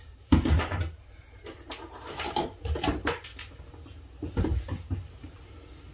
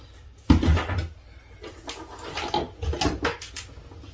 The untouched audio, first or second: second